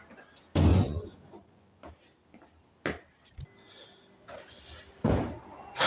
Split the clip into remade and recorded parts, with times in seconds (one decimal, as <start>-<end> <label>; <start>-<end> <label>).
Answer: 0.0-0.7 recorded; 0.7-1.8 remade; 1.8-5.9 recorded